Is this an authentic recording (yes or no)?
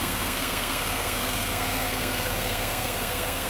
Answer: no